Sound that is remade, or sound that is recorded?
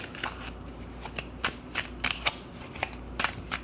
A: recorded